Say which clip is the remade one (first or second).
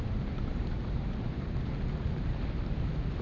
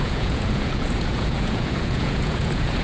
second